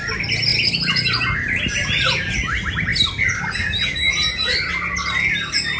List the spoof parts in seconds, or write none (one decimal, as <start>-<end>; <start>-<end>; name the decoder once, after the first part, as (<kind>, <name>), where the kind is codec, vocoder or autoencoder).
none